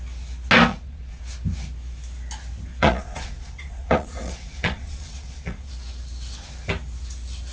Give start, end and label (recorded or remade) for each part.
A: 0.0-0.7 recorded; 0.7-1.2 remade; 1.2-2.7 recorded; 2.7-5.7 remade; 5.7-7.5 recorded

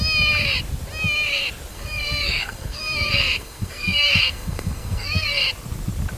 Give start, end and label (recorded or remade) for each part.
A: 0.0-1.7 recorded; 1.7-5.4 remade; 5.4-6.2 recorded

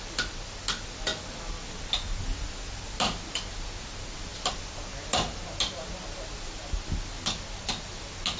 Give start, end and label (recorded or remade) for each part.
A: 0.0-8.4 recorded

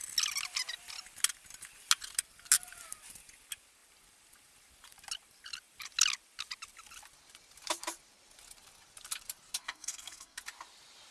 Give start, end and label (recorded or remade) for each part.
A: 0.0-9.6 recorded; 9.6-10.4 remade; 10.4-11.1 recorded

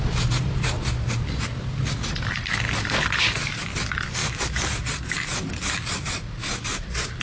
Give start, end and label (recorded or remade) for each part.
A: 0.0-4.2 recorded; 4.2-4.7 remade; 4.7-7.2 recorded

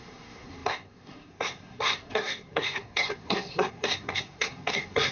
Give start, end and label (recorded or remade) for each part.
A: 0.0-5.1 remade